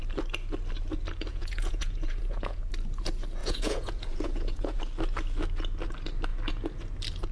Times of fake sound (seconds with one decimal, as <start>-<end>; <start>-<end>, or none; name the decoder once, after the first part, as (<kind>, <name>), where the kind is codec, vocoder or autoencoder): 1.3-2.7 (vocoder, Vocos); 3.4-4.8